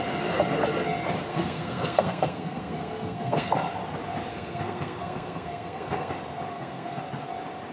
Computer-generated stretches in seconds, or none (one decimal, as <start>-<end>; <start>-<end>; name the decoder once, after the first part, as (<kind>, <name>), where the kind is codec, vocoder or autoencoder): 1.3-3.5 (codec, SNAC); 4.3-6.1; 6.5-7.0